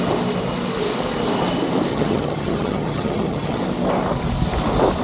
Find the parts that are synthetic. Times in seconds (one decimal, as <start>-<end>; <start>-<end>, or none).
1.9-3.6

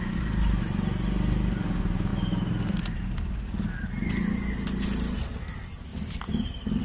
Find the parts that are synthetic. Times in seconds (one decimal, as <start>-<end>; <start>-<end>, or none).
none

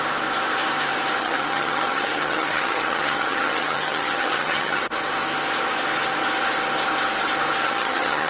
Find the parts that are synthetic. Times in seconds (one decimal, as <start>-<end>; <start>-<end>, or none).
1.2-4.8; 7.6-8.3

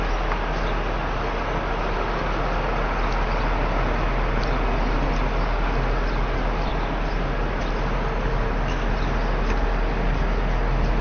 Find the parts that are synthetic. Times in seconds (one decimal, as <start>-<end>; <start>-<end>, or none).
none

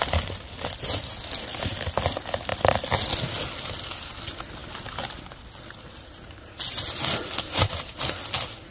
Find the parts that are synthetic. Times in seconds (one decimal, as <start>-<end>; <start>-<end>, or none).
none